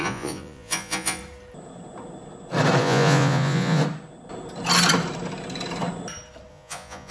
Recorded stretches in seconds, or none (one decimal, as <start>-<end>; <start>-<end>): 1.2-2.8; 3.8-6.5